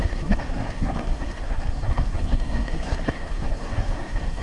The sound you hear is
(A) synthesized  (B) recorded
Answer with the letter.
A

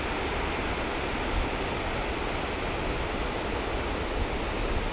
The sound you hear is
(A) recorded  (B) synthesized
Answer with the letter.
A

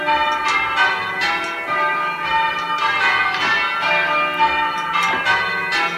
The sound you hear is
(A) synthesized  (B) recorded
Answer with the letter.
B